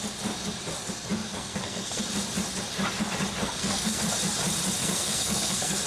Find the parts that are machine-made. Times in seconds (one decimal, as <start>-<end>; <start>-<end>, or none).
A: 1.2-2.0; 3.4-4.0; 4.8-5.9